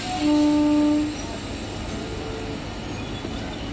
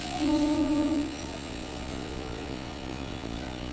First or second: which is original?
first